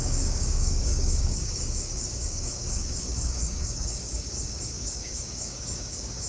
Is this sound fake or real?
fake